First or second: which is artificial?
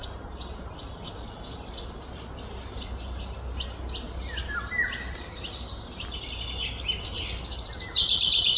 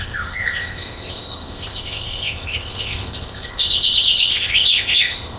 second